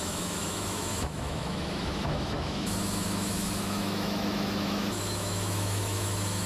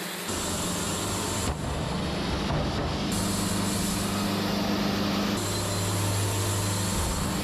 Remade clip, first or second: first